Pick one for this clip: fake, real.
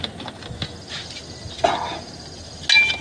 real